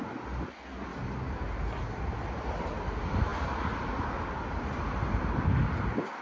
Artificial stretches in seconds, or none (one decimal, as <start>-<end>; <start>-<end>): none